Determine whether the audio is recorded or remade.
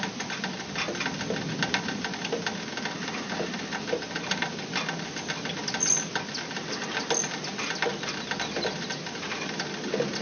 recorded